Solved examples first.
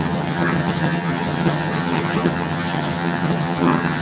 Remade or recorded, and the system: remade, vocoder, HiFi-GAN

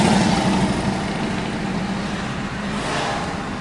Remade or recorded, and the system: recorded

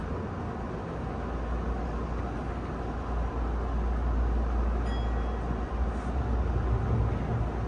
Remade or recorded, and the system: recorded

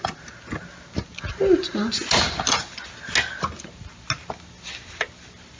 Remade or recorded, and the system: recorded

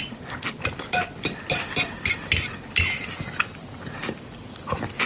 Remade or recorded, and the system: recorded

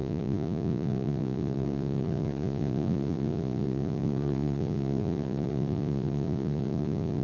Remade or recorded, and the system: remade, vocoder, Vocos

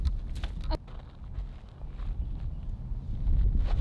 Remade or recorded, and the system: recorded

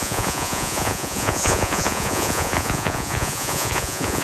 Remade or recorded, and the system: remade, vocoder, Vocos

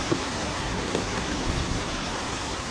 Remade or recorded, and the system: remade, codec, SNAC